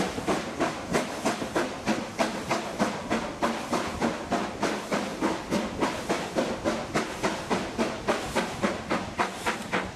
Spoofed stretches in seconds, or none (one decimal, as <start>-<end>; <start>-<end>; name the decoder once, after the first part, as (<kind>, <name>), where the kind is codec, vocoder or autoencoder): none